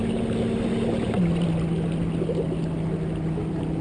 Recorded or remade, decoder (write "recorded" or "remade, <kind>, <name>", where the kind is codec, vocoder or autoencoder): recorded